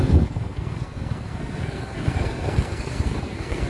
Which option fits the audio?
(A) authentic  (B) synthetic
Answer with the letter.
B